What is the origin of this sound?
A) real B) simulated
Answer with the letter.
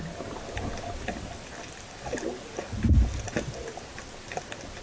A